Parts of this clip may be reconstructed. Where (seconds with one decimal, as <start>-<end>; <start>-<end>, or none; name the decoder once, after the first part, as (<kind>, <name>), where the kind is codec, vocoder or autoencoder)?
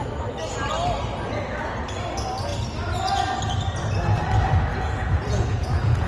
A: 4.7-6.1 (vocoder, Vocos)